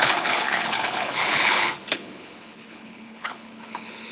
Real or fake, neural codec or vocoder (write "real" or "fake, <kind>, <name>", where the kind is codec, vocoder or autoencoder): fake, codec, HILCodec